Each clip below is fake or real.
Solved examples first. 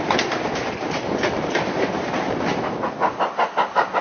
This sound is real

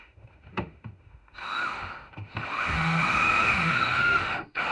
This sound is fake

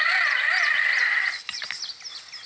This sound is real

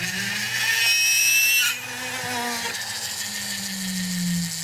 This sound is real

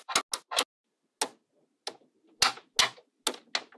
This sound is real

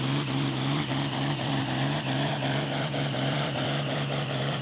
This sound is fake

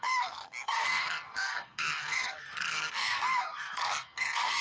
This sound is fake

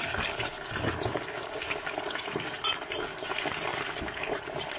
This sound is real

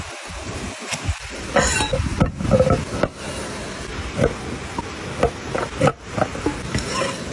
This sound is real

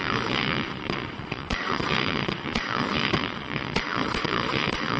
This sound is fake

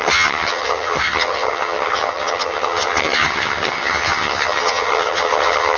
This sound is fake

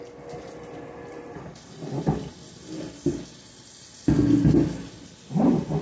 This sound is real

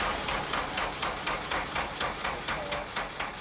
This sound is real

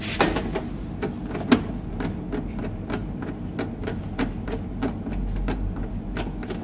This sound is real